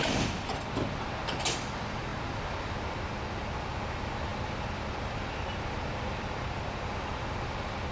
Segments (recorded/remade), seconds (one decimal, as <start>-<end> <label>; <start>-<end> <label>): 0.0-7.9 recorded